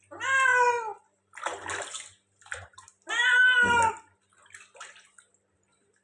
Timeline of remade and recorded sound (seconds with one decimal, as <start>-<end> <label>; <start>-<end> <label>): 0.0-6.0 recorded